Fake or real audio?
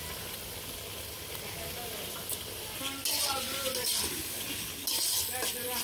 real